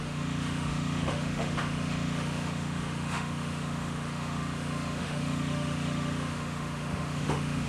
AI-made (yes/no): yes